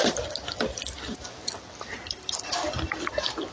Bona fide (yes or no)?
yes